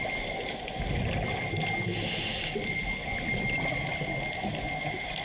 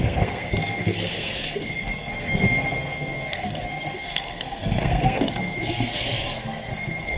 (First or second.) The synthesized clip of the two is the second